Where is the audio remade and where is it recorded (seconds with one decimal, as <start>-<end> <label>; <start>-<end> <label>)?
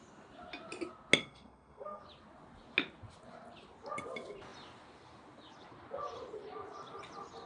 0.0-1.2 recorded; 1.2-2.0 remade; 2.0-7.5 recorded